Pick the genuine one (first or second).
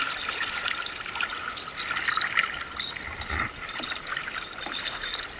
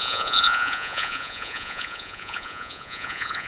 first